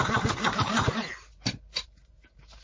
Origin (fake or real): real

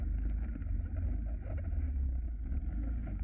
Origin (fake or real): real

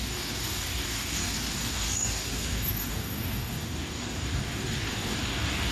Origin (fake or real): fake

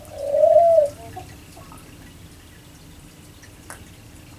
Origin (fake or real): real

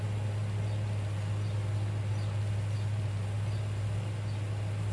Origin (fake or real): real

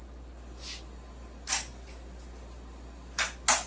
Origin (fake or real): real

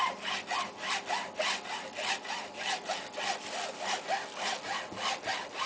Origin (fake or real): real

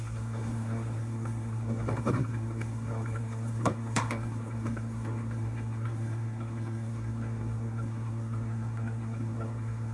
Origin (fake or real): fake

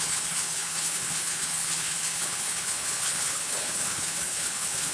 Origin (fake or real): fake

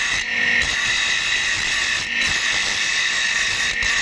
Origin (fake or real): real